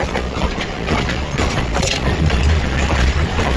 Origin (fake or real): fake